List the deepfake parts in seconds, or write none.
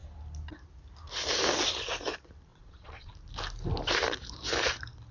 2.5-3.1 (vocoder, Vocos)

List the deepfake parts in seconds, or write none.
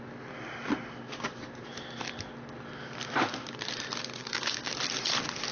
4.2-4.7 (codec, DAC)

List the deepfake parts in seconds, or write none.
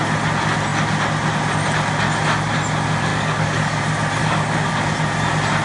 3.1-3.8 (codec, DAC); 4.2-4.7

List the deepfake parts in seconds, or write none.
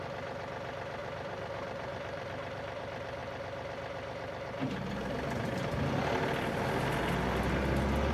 1.0-2.8 (vocoder, BigVGAN v2)